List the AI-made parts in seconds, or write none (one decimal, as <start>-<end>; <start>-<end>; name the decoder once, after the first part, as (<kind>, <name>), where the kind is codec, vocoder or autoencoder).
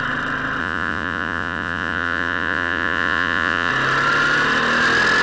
0.6-3.7 (vocoder, Vocos)